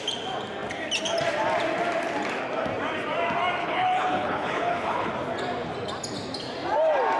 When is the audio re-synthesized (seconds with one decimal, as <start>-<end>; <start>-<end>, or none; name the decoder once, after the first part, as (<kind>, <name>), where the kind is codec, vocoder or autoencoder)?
3.6-5.1 (codec, HILCodec)